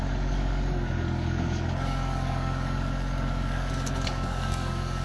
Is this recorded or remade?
remade